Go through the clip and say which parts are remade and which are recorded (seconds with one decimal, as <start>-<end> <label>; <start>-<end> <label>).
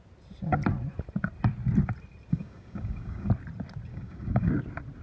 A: 0.0-2.3 recorded; 2.3-3.3 remade; 3.3-3.9 recorded; 3.9-4.5 remade; 4.5-5.0 recorded